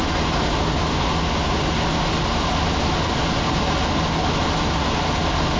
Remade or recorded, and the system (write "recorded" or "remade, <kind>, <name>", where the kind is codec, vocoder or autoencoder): recorded